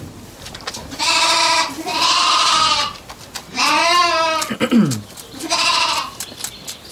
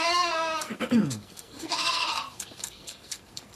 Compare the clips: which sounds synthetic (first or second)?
second